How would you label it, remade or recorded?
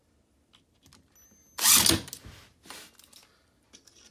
recorded